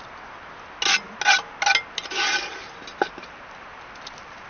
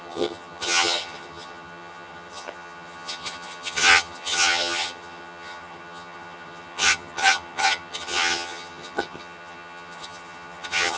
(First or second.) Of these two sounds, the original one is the first